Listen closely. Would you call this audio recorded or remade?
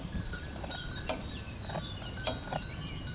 recorded